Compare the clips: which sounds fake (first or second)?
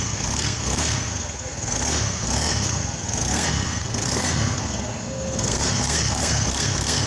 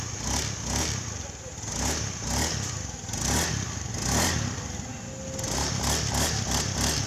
first